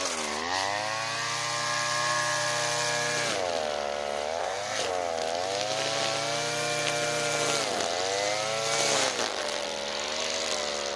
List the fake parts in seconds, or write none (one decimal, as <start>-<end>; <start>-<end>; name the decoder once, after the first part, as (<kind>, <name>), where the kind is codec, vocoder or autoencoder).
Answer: 4.4-4.9 (codec, SNAC)